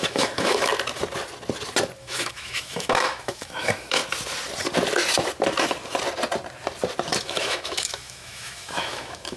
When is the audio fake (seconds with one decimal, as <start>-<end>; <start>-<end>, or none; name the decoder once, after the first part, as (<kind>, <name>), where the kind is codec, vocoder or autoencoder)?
0.0-0.7 (autoencoder, DAC-VAE); 2.0-4.0; 7.2-9.4